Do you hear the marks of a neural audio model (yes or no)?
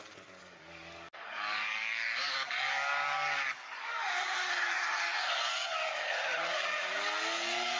yes